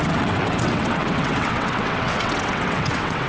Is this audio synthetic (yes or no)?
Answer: yes